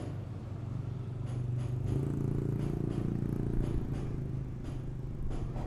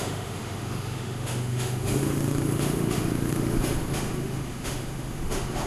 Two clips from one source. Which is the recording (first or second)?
first